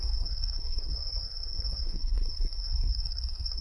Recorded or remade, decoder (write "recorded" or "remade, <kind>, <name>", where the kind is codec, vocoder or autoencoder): remade, codec, SNAC